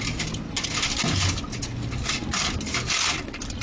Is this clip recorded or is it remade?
recorded